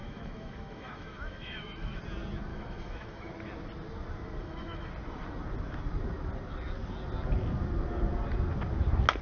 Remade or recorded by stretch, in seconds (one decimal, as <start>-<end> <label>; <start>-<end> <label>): 0.0-2.0 remade; 2.0-2.5 recorded; 2.5-3.3 remade; 3.3-4.4 recorded; 4.4-4.9 remade; 4.9-9.2 recorded

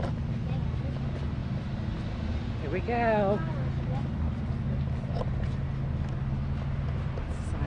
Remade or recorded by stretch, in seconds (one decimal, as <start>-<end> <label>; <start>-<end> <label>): 0.0-7.7 recorded